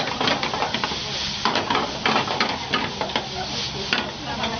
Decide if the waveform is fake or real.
real